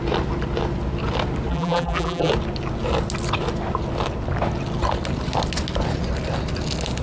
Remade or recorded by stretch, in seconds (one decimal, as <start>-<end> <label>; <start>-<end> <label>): 0.0-1.5 recorded; 1.5-2.3 remade; 2.3-7.0 recorded